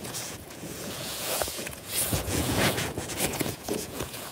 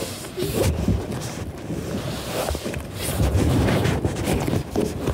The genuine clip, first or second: second